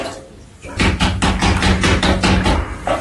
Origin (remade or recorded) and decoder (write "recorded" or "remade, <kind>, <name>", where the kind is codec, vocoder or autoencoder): recorded